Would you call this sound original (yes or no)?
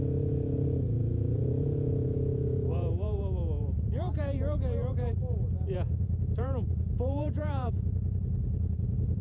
no